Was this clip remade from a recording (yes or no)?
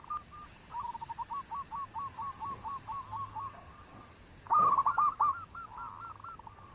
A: no